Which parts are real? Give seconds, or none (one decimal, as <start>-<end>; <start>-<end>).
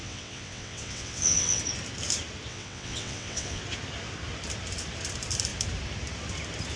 1.6-2.5; 3.6-6.8